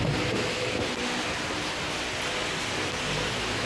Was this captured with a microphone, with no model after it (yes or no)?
yes